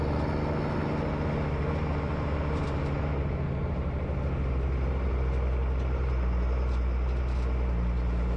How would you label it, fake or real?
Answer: real